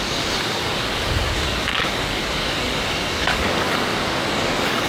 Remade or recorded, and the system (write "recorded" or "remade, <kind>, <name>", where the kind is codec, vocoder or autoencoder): remade, codec, DAC